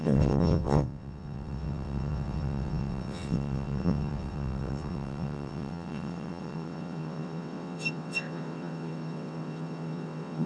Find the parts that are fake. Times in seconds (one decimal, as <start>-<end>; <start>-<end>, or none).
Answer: 0.0-10.5